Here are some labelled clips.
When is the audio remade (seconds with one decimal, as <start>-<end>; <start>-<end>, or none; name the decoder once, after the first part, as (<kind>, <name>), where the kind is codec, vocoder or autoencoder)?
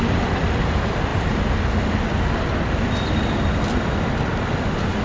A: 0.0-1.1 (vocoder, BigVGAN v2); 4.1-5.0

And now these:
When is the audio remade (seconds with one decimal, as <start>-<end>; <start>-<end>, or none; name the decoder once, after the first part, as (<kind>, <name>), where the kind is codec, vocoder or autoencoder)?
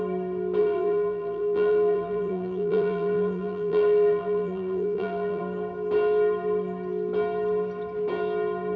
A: 0.6-5.4 (vocoder, BigVGAN v2)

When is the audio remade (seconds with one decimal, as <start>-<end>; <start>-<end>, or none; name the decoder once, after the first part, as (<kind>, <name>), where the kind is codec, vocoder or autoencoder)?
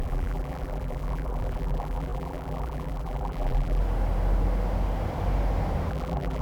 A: 0.0-3.8 (vocoder, BigVGAN v2); 5.9-6.4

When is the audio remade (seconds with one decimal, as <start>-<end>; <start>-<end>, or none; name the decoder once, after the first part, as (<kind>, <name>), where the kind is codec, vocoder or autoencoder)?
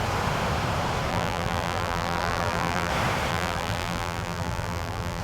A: 1.1-2.9 (vocoder, BigVGAN v2); 3.3-5.2